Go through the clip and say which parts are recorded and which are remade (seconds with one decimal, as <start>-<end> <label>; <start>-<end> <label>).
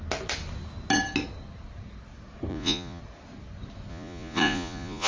0.0-2.5 recorded; 2.5-3.0 remade; 3.0-3.9 recorded; 3.9-5.1 remade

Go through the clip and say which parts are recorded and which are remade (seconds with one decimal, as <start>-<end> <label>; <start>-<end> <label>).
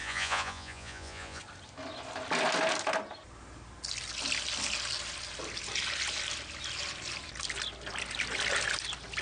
0.0-1.4 remade; 1.4-9.2 recorded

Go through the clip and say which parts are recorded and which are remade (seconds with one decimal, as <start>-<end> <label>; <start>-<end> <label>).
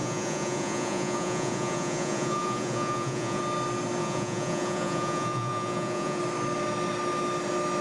0.0-3.4 remade; 3.4-4.0 recorded; 4.0-6.2 remade; 6.2-7.8 recorded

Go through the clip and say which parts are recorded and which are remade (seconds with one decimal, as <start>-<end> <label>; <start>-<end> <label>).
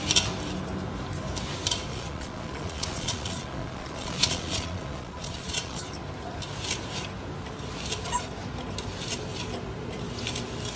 0.0-1.9 recorded; 1.9-5.8 remade; 5.8-10.8 recorded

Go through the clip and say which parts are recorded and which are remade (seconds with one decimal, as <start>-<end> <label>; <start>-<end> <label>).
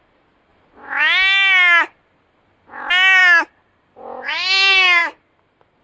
0.0-5.8 recorded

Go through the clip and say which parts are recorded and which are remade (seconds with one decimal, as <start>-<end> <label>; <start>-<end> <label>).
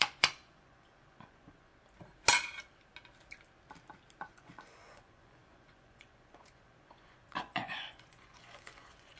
0.0-1.7 remade; 1.7-4.2 recorded; 4.2-9.2 remade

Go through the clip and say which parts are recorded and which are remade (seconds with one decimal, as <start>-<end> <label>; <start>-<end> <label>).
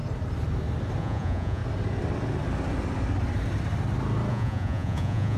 0.0-1.0 recorded; 1.0-1.6 remade; 1.6-4.3 recorded; 4.3-5.4 remade